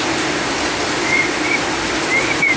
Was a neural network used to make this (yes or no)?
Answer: no